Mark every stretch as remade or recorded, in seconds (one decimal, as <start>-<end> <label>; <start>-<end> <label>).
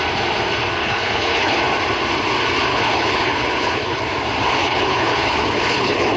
0.0-0.8 recorded; 0.8-1.6 remade; 1.6-2.7 recorded; 2.7-4.0 remade; 4.0-4.6 recorded; 4.6-6.2 remade